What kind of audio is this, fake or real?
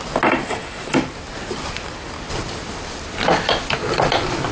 real